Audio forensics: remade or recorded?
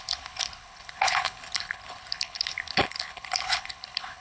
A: remade